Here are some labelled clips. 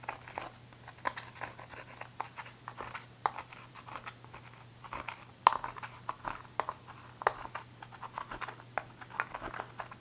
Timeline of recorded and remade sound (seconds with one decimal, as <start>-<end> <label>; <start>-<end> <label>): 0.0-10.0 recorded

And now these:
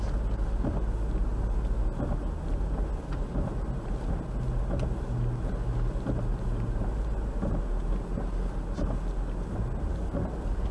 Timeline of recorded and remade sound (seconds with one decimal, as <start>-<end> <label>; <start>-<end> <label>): 0.0-10.7 recorded

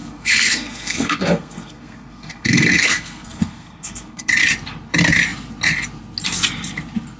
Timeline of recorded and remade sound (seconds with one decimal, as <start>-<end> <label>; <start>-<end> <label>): 0.0-4.3 remade; 4.3-7.2 recorded

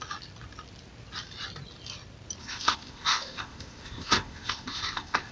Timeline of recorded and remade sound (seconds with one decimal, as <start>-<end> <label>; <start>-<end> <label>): 0.0-2.4 recorded; 2.4-5.3 remade

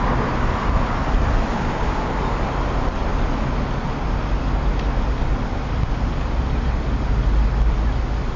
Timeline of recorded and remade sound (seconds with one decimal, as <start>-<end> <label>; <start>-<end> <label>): 0.0-1.5 recorded; 1.5-2.1 remade; 2.1-8.4 recorded

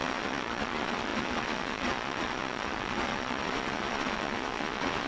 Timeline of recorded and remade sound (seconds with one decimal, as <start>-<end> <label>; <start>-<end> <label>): 0.0-5.1 remade

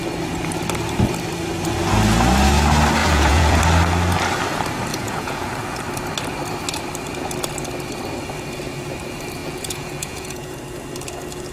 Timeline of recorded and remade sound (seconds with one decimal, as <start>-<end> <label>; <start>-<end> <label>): 0.0-3.0 recorded; 3.0-3.6 remade; 3.6-4.9 recorded; 4.9-5.5 remade; 5.5-9.4 recorded; 9.4-10.6 remade; 10.6-11.5 recorded

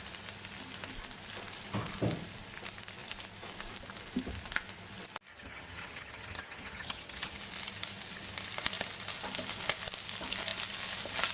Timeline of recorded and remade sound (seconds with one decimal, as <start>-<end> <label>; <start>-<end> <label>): 0.0-5.3 recorded; 5.3-7.4 remade; 7.4-11.3 recorded